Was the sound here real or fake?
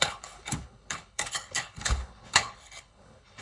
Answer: fake